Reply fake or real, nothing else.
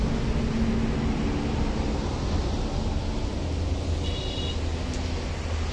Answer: real